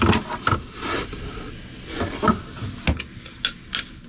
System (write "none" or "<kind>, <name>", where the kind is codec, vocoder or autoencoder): none